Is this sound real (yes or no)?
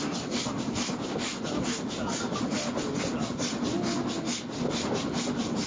yes